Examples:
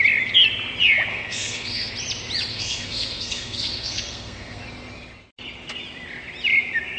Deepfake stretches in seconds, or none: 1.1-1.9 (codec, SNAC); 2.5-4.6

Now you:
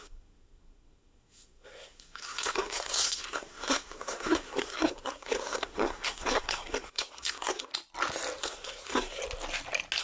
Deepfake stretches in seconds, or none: 0.0-7.7 (codec, SNAC); 8.4-9.2

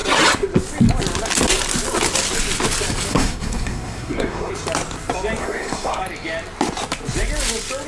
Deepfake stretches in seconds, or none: 3.1-4.5 (codec, SNAC); 5.4-6.0

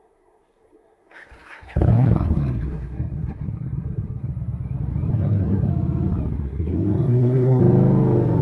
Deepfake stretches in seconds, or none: 0.0-4.3 (codec, SNAC); 5.1-5.7; 6.4-7.6

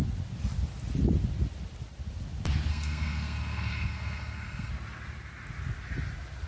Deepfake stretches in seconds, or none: 2.7-4.7 (codec, SNAC)